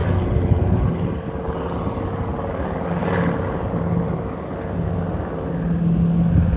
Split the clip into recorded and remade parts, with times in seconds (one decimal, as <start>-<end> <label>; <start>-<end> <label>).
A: 0.0-6.6 recorded